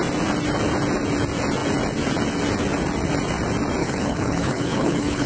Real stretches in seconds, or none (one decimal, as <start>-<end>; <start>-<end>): 0.0-3.8